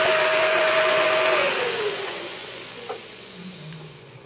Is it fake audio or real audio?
fake